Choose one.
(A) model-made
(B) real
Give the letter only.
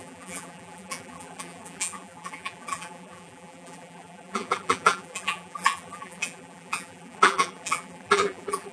A